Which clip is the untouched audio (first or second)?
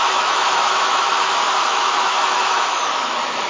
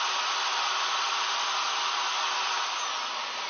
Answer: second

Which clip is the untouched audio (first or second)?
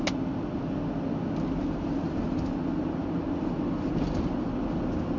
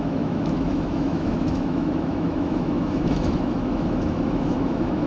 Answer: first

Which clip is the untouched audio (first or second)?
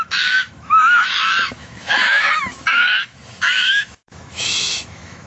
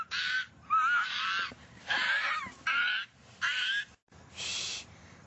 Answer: second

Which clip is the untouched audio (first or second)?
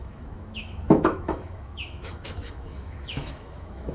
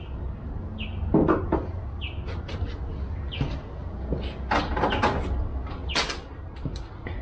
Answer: second